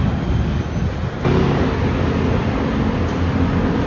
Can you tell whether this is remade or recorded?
recorded